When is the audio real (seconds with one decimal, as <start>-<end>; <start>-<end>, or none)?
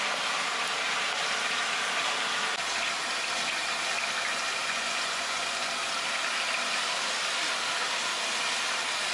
0.0-4.3; 5.7-9.1